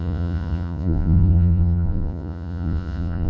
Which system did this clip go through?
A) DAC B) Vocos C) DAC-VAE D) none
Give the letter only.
B